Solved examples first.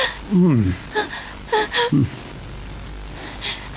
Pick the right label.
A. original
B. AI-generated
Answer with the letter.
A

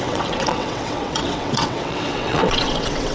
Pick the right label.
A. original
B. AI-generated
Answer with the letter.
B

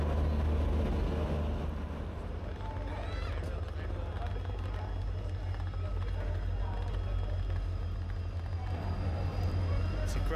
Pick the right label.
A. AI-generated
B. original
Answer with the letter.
B